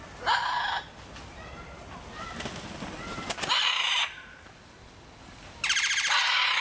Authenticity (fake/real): real